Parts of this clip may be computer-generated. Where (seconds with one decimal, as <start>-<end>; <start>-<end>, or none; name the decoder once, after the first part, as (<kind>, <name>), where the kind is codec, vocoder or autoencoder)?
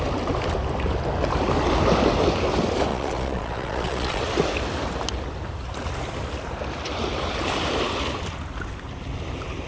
2.9-4.2 (vocoder, Vocos)